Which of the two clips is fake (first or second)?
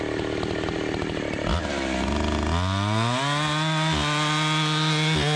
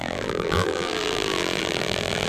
second